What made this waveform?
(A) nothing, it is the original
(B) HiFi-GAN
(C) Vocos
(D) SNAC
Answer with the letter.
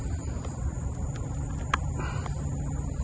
A